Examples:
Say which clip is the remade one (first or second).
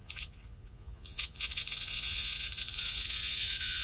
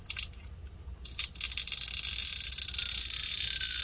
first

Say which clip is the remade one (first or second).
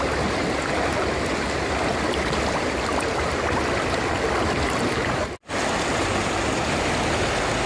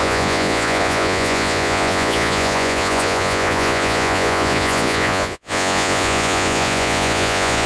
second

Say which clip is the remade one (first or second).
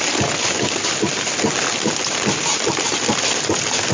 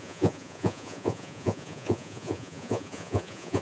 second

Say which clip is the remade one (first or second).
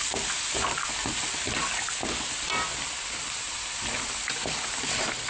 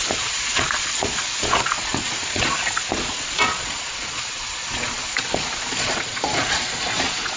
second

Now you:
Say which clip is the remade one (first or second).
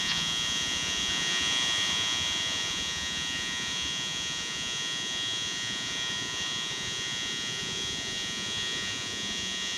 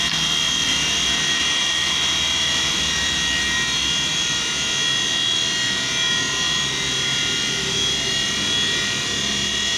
first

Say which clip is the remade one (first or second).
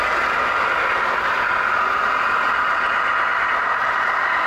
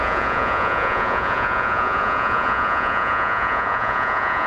second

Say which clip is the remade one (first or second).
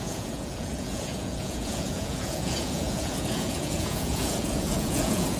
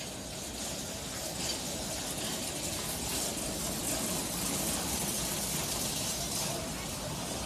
first